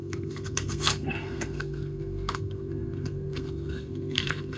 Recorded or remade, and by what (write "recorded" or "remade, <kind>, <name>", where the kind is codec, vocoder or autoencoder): remade, codec, SNAC